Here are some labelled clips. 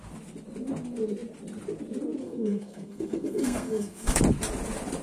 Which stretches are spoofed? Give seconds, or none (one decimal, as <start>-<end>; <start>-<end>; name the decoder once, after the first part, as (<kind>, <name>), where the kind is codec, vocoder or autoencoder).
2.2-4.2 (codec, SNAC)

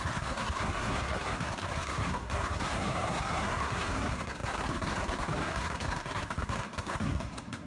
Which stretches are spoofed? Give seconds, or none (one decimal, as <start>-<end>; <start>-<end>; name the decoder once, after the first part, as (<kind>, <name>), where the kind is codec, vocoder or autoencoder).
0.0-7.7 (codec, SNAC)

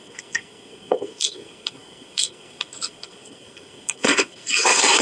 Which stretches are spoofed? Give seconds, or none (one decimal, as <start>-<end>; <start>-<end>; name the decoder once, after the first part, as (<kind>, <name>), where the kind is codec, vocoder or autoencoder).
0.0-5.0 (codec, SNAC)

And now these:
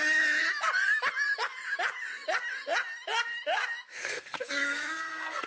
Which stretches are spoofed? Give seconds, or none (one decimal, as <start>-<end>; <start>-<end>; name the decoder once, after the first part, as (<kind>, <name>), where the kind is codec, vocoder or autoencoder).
3.9-5.5 (codec, SNAC)

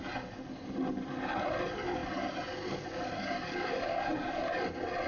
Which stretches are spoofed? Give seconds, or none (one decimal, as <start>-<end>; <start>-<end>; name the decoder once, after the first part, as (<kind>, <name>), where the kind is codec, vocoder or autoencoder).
none